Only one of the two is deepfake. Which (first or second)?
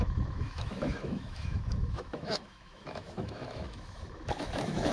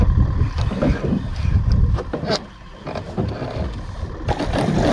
first